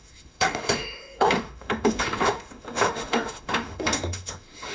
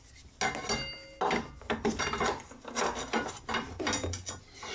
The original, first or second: second